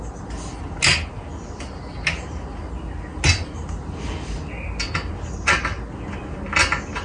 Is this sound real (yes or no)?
yes